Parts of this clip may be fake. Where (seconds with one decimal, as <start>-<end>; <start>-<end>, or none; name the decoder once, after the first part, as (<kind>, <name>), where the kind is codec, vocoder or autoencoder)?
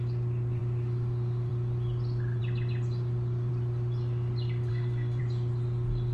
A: 4.7-5.2 (codec, SNAC)